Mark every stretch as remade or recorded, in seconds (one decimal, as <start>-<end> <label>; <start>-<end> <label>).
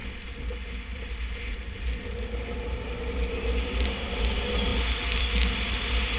0.0-6.2 recorded